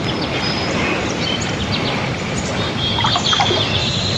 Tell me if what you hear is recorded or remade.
recorded